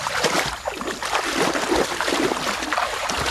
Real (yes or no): yes